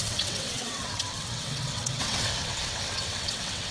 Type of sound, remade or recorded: remade